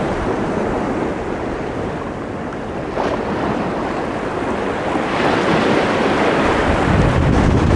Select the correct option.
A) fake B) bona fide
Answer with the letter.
B